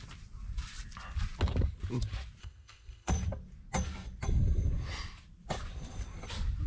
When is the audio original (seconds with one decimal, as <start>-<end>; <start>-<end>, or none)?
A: 0.0-2.4; 3.1-6.7